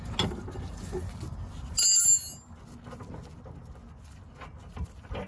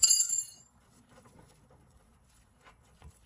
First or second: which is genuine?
first